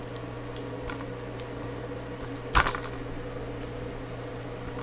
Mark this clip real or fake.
real